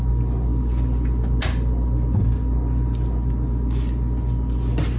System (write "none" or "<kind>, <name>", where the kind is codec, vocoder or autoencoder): none